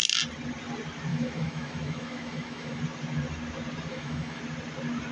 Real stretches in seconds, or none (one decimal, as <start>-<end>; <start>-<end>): 0.0-1.1; 2.8-3.9; 4.4-5.1